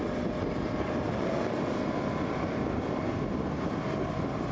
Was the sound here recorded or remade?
recorded